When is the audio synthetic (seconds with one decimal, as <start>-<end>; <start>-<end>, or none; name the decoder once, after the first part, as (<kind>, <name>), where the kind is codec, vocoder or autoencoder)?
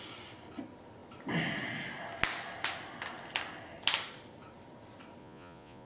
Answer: 5.2-5.9 (vocoder, Vocos)